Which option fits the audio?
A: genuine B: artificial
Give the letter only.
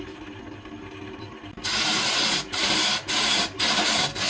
A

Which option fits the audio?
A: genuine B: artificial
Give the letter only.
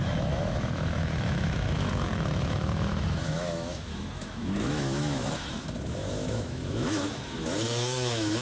B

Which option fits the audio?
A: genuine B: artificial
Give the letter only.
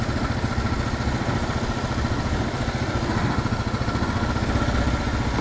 A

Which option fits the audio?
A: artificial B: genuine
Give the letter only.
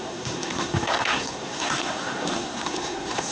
A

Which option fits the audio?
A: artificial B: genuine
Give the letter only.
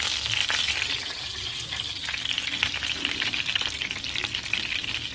B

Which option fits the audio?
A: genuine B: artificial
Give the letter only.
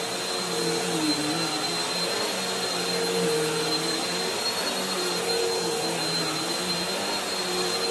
A